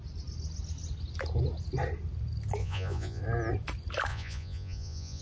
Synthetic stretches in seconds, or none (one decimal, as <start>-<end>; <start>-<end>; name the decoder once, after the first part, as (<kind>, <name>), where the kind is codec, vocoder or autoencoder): 2.6-3.2 (vocoder, Vocos); 4.1-5.2

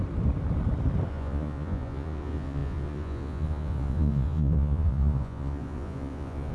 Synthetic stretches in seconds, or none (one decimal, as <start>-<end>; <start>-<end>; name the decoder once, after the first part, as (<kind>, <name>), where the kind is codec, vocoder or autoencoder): 1.1-6.5 (vocoder, Vocos)